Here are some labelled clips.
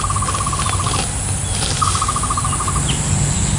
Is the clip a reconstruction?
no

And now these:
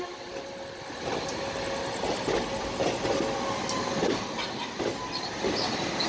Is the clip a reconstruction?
no